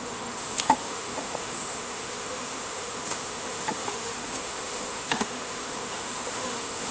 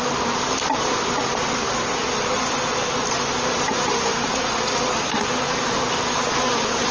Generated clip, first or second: first